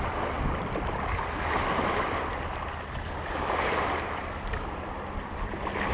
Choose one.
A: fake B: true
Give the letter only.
B